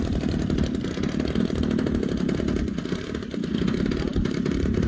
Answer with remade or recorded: recorded